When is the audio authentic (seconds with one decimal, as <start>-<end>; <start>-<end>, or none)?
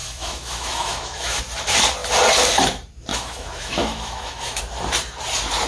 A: 1.4-3.1; 4.6-5.7